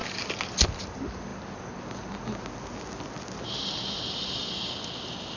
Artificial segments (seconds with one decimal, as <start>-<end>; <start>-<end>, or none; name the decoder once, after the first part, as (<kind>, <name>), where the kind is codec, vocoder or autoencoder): none